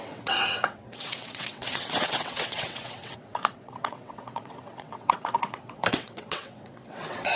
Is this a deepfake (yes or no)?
yes